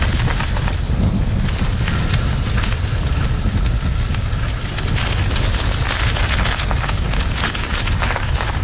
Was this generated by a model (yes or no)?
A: no